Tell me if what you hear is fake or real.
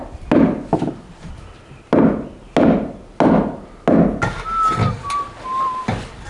real